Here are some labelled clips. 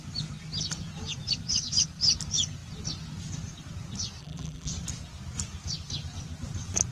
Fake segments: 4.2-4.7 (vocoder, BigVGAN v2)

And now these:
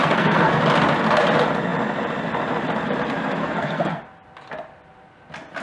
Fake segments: 0.0-0.6 (codec, SNAC); 3.4-4.0

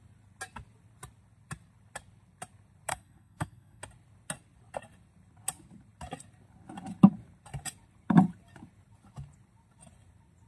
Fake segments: 2.9-3.8 (codec, SNAC)

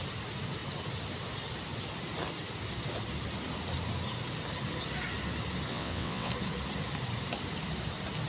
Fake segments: 5.7-6.3 (vocoder, WaveNeXt)

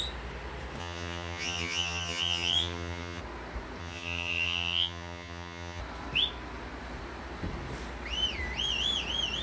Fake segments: 0.8-3.2 (vocoder, HiFi-GAN); 3.8-5.8

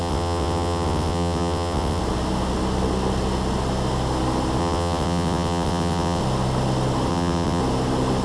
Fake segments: 0.0-2.0 (vocoder, WaveNeXt); 4.6-6.2; 7.1-7.6